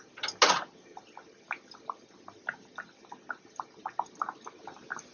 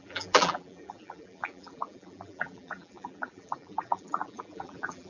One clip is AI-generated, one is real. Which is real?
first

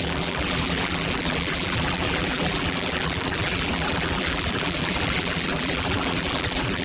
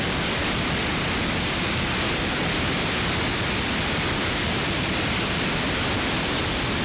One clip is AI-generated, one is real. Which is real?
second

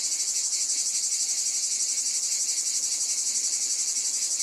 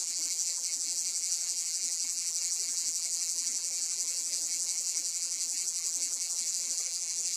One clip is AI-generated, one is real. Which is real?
first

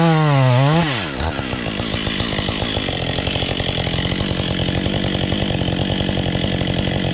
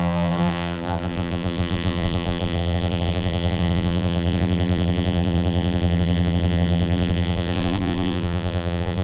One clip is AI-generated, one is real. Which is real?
first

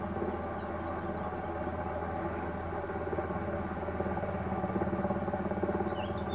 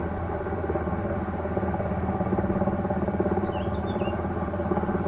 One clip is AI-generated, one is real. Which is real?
first